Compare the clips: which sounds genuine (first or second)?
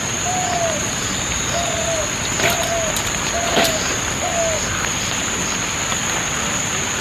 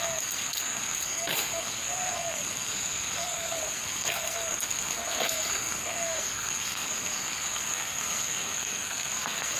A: first